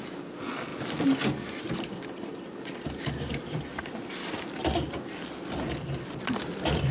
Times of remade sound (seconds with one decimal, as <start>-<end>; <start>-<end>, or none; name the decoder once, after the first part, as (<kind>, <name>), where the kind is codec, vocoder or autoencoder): 0.0-0.7 (vocoder, BigVGAN v2); 1.6-3.7; 6.2-6.9